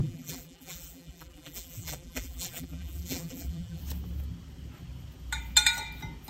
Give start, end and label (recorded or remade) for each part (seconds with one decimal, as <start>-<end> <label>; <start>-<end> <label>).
0.0-3.8 remade; 3.8-6.3 recorded